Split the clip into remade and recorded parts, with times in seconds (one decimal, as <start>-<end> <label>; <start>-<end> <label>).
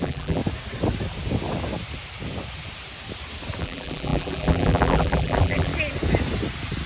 0.0-0.4 remade; 0.4-3.6 recorded; 3.6-5.7 remade; 5.7-6.9 recorded